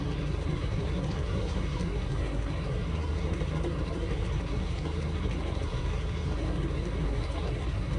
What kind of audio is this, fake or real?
fake